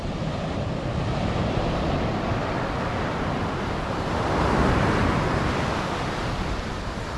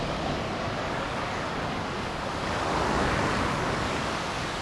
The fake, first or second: second